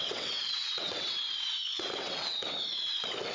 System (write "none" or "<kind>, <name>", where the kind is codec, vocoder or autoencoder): vocoder, WaveNeXt